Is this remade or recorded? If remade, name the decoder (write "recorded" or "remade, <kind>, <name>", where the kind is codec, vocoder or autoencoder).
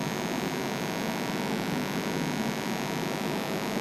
recorded